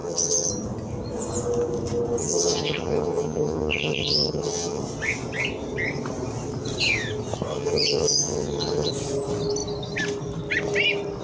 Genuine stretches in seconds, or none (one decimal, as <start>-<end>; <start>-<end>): 0.5-2.2; 4.8-7.5; 8.9-11.2